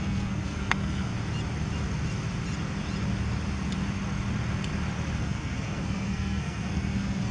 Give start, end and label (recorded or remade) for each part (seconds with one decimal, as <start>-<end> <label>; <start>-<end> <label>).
0.0-1.1 remade; 1.1-5.2 recorded; 5.2-7.3 remade